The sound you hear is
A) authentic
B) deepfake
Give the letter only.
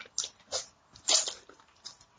A